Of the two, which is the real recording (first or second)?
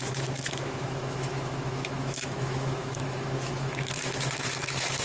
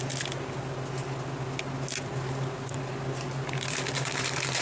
second